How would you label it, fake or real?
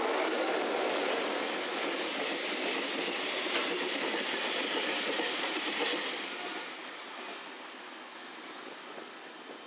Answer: real